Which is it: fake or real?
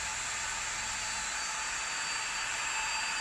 real